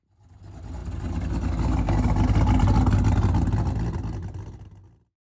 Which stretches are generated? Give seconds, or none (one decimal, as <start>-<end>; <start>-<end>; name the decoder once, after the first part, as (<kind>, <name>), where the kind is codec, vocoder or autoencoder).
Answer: none